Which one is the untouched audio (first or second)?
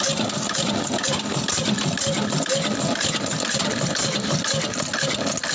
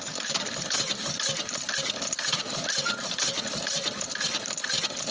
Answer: first